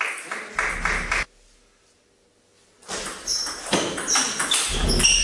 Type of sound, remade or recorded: recorded